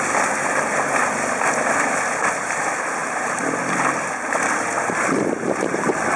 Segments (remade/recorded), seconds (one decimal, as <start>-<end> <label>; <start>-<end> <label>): 0.0-3.0 recorded; 3.0-3.6 remade; 3.6-6.2 recorded